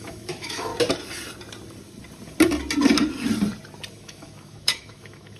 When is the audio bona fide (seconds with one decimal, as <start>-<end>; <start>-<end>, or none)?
0.7-3.9